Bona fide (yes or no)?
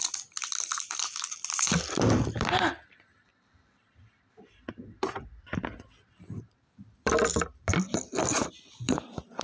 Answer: no